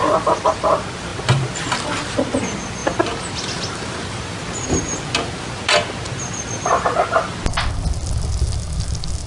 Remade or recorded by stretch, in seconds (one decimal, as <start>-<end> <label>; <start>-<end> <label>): 0.0-9.3 recorded